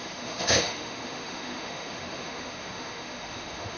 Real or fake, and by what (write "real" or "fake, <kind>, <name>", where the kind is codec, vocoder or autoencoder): fake, autoencoder, DAC-VAE